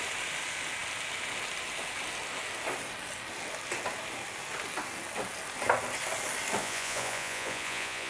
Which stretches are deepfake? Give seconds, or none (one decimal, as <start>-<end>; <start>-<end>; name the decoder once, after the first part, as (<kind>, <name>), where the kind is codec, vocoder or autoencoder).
6.6-8.1 (vocoder, Vocos)